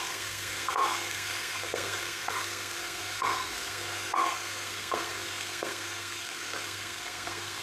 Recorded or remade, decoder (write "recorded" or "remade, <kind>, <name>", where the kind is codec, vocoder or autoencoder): remade, codec, SNAC